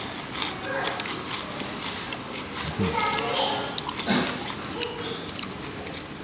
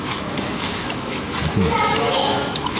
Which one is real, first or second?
first